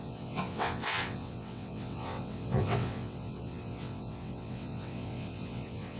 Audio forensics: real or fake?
fake